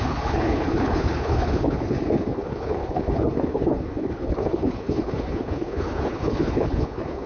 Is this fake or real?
fake